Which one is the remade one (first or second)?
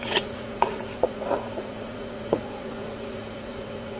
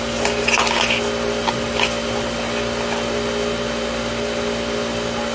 first